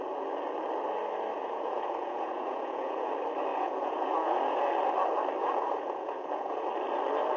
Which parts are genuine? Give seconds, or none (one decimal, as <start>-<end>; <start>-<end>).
0.0-1.3; 3.1-3.5; 4.6-5.4; 6.7-7.4